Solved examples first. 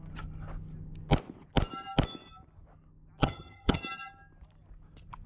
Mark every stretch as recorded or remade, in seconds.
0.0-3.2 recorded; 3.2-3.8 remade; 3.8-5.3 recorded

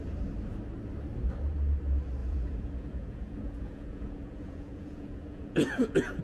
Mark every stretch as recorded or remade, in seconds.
0.0-2.2 recorded; 2.2-6.2 remade